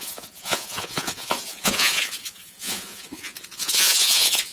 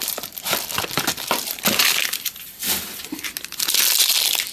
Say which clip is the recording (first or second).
second